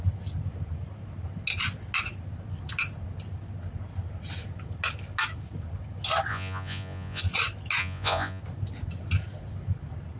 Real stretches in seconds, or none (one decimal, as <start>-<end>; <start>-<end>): 0.0-6.3; 7.2-7.8; 8.4-10.2